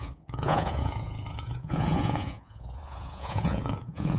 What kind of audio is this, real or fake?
fake